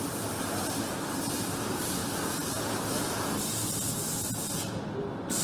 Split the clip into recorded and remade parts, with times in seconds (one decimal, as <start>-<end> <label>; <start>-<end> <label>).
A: 0.0-2.0 remade; 2.0-5.4 recorded